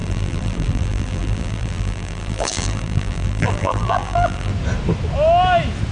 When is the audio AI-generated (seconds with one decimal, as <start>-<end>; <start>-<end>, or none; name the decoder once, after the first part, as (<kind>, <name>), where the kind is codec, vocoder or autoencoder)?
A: 0.0-4.5 (vocoder, BigVGAN v2)